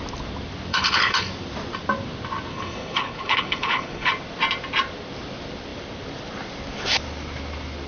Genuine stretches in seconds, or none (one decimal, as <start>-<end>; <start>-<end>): 0.0-0.7; 1.3-2.5; 4.1-7.9